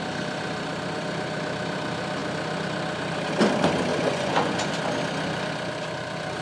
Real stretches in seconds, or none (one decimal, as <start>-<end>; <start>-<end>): 0.0-3.9; 4.7-6.4